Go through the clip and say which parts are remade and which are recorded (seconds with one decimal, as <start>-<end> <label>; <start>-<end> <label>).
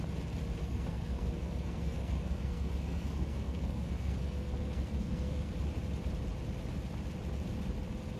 0.0-0.6 recorded; 0.6-5.5 remade; 5.5-8.2 recorded